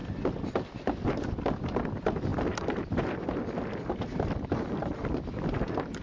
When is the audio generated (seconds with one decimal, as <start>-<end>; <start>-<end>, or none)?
2.3-3.4; 5.0-6.0